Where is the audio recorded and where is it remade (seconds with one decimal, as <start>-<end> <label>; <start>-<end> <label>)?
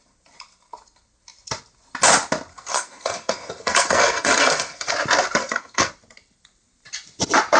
0.0-2.5 recorded; 2.5-4.9 remade; 4.9-5.4 recorded; 5.4-5.9 remade; 5.9-7.6 recorded